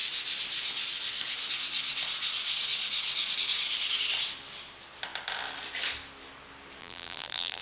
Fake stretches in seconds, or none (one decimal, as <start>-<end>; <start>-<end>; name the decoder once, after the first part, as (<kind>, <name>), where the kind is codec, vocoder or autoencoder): 6.8-7.6 (vocoder, BigVGAN v2)